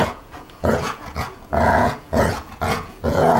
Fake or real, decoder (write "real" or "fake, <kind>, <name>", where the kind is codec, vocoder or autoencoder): fake, vocoder, Vocos